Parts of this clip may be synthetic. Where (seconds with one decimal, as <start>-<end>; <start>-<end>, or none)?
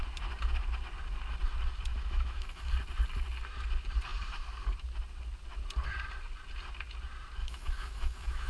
1.9-2.7; 7.4-8.5